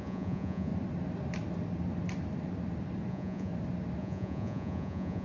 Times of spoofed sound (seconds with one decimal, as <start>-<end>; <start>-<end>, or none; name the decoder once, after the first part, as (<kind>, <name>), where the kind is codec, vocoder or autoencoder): 0.0-0.7 (vocoder, Vocos); 3.1-3.5; 4.0-5.2